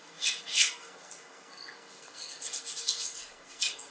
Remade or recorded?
remade